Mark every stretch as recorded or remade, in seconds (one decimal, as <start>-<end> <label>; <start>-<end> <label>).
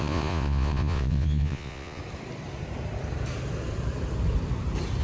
0.0-2.0 remade; 2.0-5.0 recorded